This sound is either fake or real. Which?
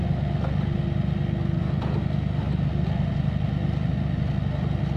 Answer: real